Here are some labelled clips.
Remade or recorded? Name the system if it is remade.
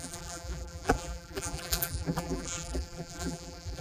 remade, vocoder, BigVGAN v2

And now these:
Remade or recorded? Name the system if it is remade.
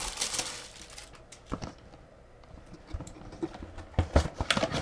recorded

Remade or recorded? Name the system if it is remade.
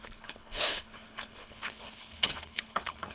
remade, codec, HILCodec